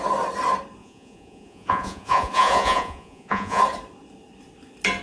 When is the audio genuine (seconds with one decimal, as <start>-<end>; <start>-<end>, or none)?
0.0-0.8; 3.6-5.0